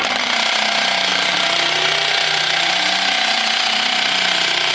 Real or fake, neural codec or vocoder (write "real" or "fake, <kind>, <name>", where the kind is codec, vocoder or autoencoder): real